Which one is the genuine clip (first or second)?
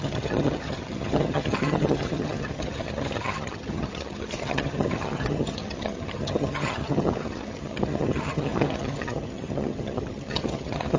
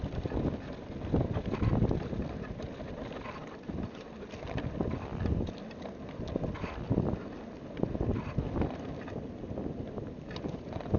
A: second